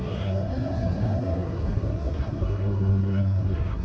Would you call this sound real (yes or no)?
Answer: no